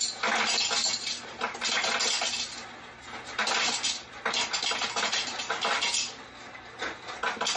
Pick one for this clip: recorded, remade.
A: recorded